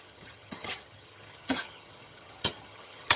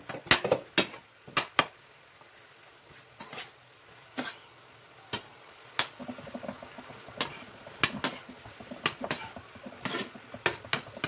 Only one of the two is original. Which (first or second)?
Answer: second